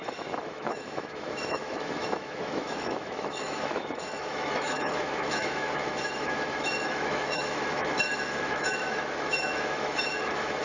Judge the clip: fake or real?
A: fake